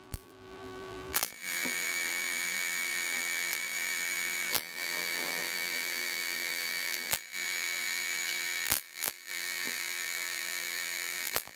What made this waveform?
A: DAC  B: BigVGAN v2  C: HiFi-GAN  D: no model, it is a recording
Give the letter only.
B